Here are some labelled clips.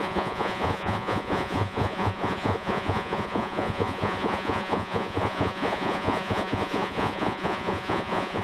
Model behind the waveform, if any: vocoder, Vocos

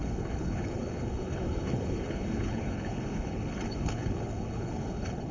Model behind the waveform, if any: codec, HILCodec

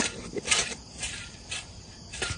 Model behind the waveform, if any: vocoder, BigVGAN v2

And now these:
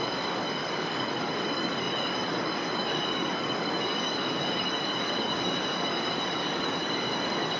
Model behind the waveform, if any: codec, DAC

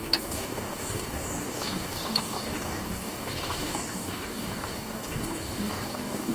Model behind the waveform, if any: codec, DAC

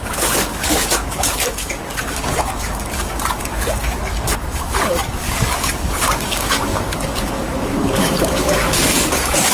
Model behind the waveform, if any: codec, DAC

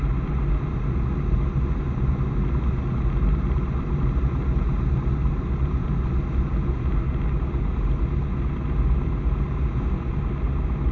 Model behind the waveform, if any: none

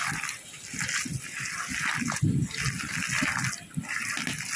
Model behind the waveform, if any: none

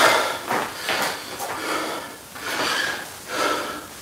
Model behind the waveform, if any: none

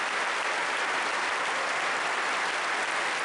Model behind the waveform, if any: none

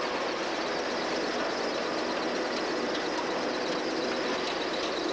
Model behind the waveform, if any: none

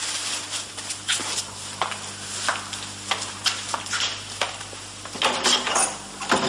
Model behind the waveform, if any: none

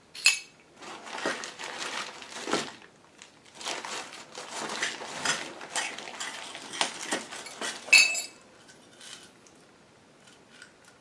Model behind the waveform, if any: none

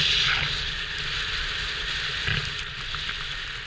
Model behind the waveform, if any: none